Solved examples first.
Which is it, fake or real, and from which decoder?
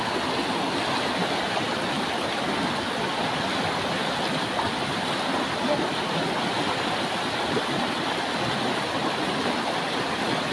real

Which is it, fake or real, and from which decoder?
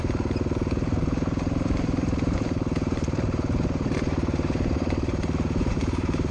fake, vocoder, BigVGAN v2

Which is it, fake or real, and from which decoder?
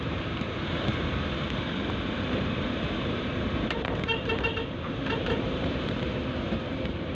fake, vocoder, BigVGAN v2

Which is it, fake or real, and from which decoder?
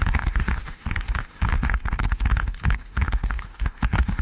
fake, autoencoder, DAC-VAE